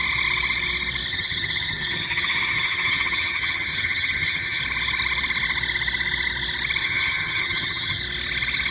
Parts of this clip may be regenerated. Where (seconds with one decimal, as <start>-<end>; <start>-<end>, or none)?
1.1-4.6; 6.8-8.0